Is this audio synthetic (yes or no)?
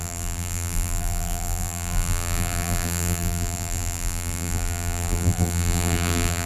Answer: yes